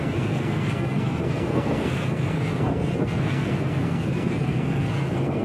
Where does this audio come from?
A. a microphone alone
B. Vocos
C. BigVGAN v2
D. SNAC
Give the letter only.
D